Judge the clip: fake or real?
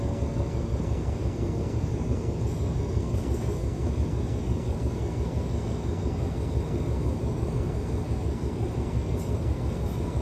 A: fake